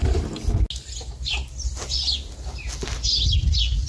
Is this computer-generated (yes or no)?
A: no